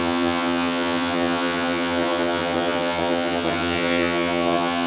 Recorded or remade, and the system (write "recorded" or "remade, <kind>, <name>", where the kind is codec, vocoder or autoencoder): remade, vocoder, HiFi-GAN